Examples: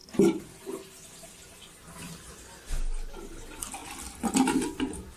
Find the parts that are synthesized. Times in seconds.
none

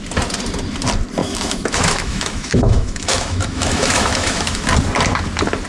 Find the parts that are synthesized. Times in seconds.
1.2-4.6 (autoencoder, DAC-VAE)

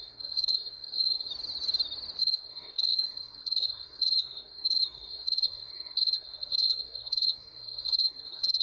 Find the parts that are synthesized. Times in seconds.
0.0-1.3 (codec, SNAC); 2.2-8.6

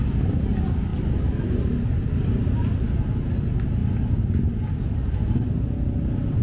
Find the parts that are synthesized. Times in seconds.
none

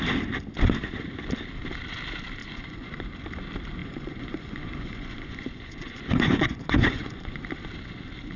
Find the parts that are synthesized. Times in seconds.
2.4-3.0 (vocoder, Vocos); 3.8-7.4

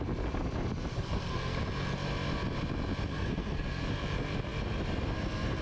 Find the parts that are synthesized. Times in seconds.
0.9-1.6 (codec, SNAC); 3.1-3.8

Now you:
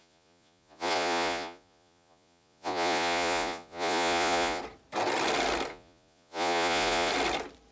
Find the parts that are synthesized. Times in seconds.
0.0-4.6 (vocoder, Vocos); 5.7-7.1